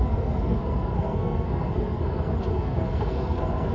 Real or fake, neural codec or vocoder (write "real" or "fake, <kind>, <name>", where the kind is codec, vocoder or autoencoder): fake, codec, SNAC